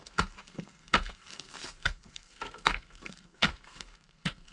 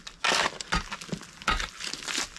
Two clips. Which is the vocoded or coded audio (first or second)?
first